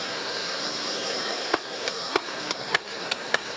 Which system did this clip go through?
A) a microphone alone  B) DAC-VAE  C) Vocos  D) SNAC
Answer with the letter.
D